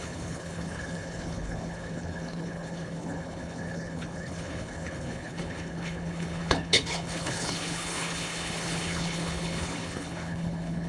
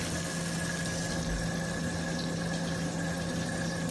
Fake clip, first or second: first